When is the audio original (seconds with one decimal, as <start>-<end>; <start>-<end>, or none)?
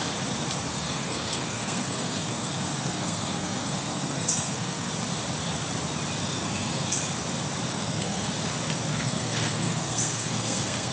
0.0-0.7; 4.9-6.2; 7.0-7.7; 8.3-8.9